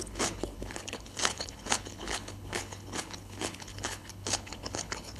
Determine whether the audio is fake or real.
fake